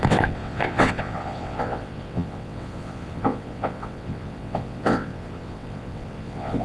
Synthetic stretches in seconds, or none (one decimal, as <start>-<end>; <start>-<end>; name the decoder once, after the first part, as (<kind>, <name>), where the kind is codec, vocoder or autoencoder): 0.0-6.6 (vocoder, WaveNeXt)